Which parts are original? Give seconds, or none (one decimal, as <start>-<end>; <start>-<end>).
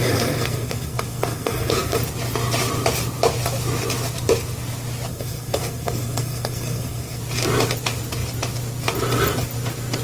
2.0-5.1; 7.2-10.0